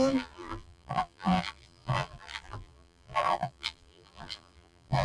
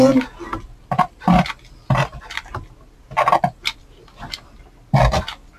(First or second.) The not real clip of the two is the first